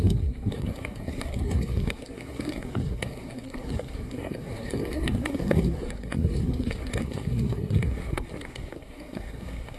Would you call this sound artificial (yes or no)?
yes